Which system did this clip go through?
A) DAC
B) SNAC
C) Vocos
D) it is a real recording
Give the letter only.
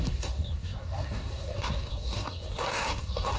B